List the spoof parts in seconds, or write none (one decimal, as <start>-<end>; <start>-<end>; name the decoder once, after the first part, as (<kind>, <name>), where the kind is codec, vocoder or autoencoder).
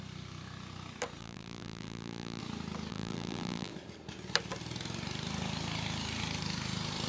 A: 1.2-2.4 (vocoder, BigVGAN v2); 2.9-3.7